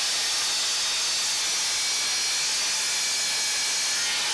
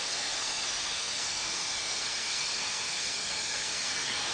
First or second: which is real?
first